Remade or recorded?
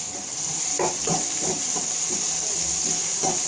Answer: recorded